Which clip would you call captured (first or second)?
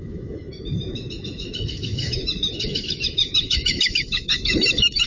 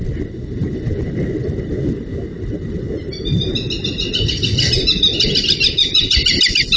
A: second